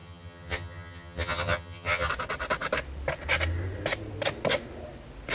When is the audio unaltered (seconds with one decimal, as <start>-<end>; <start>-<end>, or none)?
2.1-5.3